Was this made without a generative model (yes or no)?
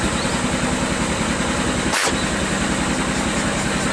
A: yes